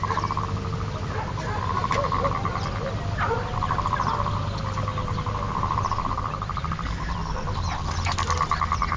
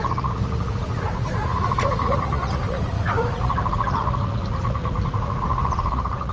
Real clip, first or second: first